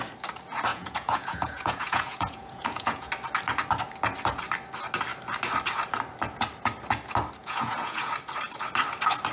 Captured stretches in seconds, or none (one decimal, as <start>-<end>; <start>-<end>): 0.0-0.7; 3.1-7.4; 8.1-9.3